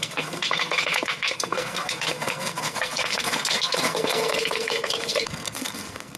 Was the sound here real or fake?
fake